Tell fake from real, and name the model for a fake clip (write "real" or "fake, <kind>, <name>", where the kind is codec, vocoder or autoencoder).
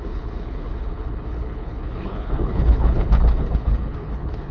fake, codec, HILCodec